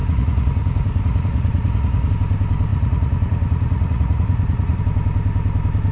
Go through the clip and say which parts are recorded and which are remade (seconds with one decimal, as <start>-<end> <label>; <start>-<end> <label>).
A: 0.0-2.1 remade; 2.1-2.7 recorded; 2.7-4.8 remade; 4.8-5.9 recorded